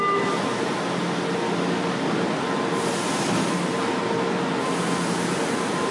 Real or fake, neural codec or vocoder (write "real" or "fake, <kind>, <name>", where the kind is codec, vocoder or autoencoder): real